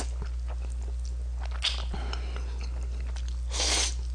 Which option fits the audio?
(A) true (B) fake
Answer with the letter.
A